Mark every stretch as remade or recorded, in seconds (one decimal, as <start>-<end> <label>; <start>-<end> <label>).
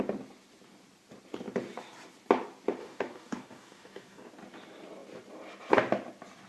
0.0-2.8 recorded; 2.8-4.3 remade; 4.3-6.5 recorded